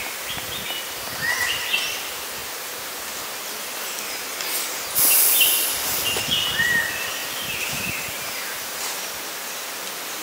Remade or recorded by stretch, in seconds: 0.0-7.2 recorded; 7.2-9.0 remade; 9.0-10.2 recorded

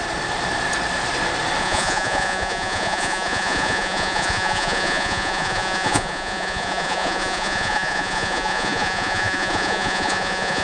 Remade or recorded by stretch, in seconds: 0.0-1.6 recorded; 1.6-10.6 remade

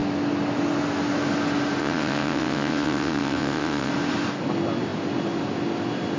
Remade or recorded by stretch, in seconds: 0.0-1.8 recorded; 1.8-3.9 remade; 3.9-6.2 recorded

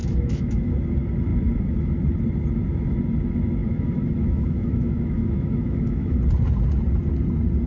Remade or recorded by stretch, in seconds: 0.0-0.7 remade; 0.7-3.6 recorded; 3.6-6.2 remade; 6.2-7.7 recorded

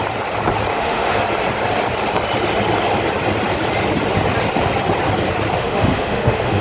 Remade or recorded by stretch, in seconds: 0.0-0.7 recorded; 0.7-1.2 remade; 1.2-5.6 recorded; 5.6-6.6 remade

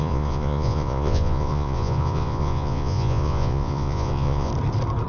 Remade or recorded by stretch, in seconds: 0.0-4.5 remade; 4.5-5.1 recorded

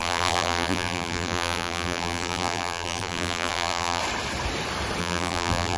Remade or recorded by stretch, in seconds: 0.0-4.0 remade; 4.0-5.0 recorded; 5.0-5.8 remade